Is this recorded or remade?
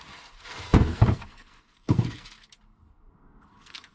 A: remade